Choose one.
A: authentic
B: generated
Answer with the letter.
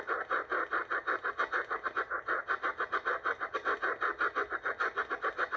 A